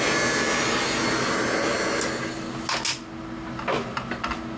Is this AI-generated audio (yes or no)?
no